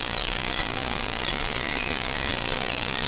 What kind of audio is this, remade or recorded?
remade